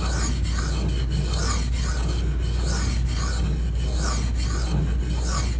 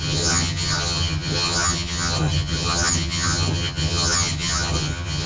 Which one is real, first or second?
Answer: first